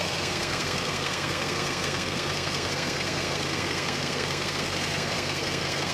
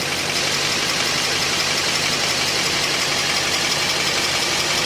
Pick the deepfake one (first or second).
first